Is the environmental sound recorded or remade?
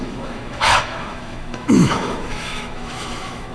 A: remade